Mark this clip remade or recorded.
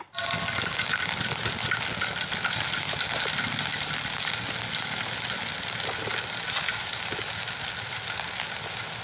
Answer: recorded